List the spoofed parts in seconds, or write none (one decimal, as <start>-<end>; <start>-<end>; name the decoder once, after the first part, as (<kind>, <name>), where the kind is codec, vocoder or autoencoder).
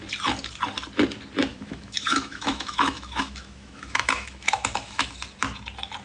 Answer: 1.5-5.1 (autoencoder, DAC-VAE)